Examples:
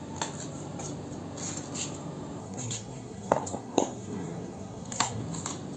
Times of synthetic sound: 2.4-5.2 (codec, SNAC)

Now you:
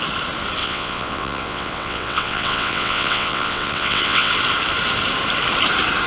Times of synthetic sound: 0.6-4.3 (vocoder, WaveNeXt)

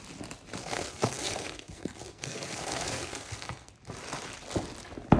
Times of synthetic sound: 0.6-3.7 (codec, SNAC)

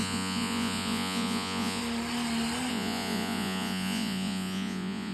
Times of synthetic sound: 0.0-1.8 (vocoder, Vocos); 2.7-5.1

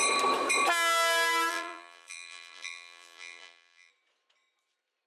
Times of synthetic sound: 1.5-3.9 (vocoder, BigVGAN v2)

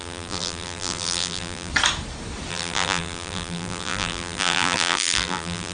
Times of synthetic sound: 0.0-1.7 (vocoder, BigVGAN v2); 2.5-5.7

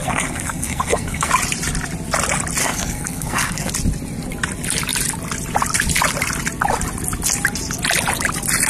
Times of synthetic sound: 0.0-1.3 (codec, SNAC); 2.6-3.7

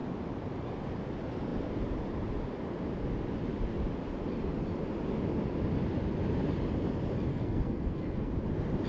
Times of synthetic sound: 7.3-8.3 (codec, SNAC)